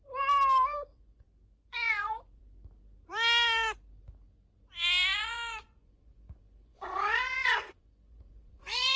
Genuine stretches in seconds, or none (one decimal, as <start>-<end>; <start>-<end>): 0.0-0.9; 2.4-5.1